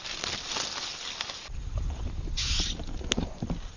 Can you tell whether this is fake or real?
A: real